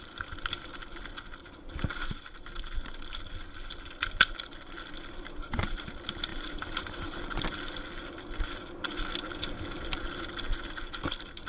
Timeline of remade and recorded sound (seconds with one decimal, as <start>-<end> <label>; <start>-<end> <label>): 0.0-6.3 recorded; 6.3-7.2 remade; 7.2-11.5 recorded